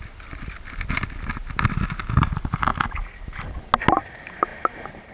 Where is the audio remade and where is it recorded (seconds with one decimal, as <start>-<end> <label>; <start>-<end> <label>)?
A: 0.0-5.1 recorded